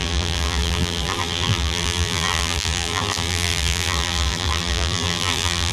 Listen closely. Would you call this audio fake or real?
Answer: fake